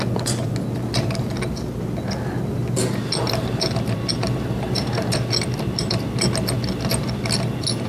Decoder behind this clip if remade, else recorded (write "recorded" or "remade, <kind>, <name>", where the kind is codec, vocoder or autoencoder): recorded